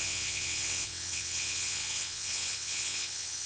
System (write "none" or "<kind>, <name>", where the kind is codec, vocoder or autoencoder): vocoder, WaveNeXt